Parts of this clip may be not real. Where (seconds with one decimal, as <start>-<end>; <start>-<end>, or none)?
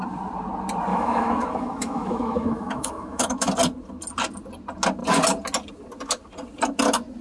0.9-3.5